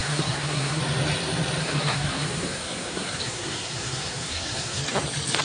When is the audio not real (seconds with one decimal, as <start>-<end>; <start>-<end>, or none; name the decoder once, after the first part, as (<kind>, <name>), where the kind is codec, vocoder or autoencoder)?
0.0-0.8 (codec, SNAC); 1.6-4.8

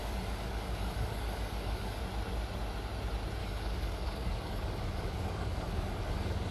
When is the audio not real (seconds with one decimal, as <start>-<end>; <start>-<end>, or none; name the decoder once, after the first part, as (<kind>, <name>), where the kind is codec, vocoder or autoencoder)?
0.0-2.0 (codec, DAC); 3.4-6.5

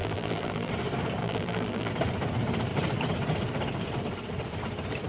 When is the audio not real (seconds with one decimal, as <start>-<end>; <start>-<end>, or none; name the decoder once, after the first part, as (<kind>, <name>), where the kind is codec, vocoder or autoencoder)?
0.0-0.7 (vocoder, BigVGAN v2); 1.2-1.9

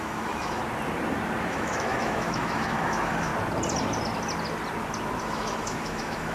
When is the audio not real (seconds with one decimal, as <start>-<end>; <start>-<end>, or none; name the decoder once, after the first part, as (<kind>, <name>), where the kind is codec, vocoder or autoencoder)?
0.0-0.6 (autoencoder, DAC-VAE); 1.5-3.3; 5.2-6.3

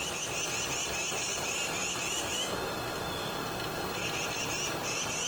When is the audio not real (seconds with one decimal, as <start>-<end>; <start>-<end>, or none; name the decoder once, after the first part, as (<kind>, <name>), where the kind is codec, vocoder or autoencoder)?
1.3-2.1 (vocoder, BigVGAN v2); 4.0-5.3

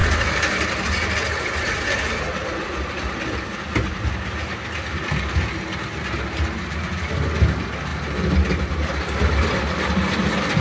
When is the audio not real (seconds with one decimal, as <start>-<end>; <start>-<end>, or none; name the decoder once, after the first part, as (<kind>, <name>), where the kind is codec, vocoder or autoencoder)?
none